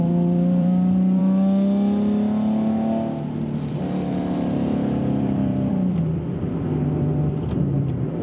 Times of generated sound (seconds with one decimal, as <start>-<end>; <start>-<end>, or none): 0.0-1.2; 3.7-8.2